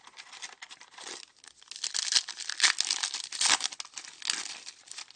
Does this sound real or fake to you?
real